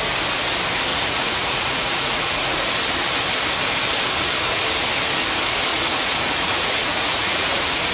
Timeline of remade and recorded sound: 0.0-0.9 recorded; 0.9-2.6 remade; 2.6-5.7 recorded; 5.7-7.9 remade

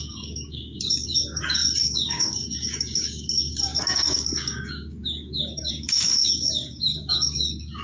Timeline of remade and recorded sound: 0.0-7.8 remade